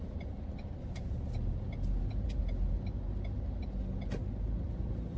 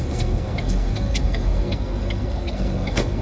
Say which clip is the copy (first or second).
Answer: second